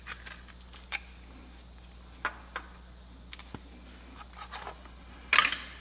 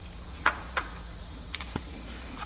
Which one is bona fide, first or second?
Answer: first